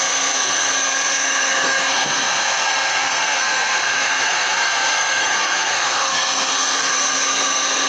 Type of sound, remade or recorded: remade